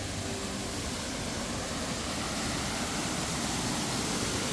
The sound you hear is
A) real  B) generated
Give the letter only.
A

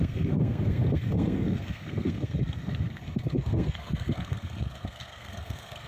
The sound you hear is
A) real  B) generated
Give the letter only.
B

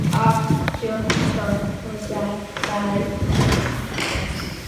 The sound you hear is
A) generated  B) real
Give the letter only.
A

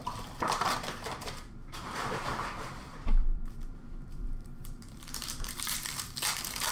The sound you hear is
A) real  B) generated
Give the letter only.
B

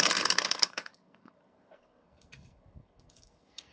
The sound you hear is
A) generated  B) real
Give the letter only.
A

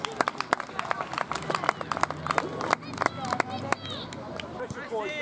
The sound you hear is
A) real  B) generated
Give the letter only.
A